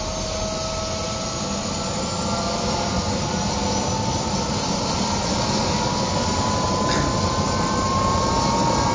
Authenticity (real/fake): real